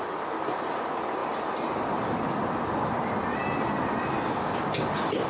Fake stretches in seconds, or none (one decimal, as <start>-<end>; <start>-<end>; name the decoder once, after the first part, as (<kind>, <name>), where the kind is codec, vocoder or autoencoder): 1.2-2.0 (vocoder, BigVGAN v2); 3.4-4.2